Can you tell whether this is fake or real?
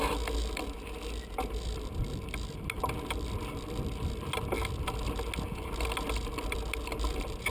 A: real